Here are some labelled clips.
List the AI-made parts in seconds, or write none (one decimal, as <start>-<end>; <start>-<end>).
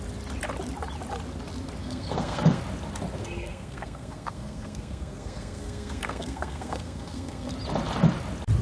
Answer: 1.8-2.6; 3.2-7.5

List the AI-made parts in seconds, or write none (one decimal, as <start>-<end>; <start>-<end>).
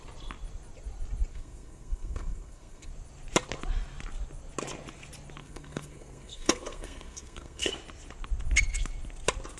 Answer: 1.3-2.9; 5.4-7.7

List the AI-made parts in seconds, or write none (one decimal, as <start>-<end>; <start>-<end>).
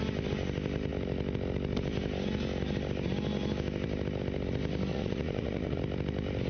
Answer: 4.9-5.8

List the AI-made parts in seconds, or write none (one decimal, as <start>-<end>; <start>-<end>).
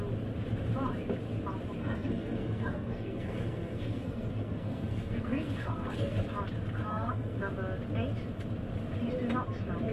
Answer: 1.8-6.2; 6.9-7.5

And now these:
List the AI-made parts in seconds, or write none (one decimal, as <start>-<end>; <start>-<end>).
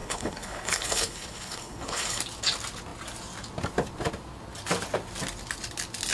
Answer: 0.0-2.2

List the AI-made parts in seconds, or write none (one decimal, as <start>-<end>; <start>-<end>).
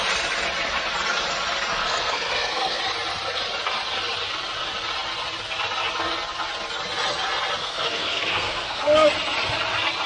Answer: 1.8-2.8; 7.6-9.1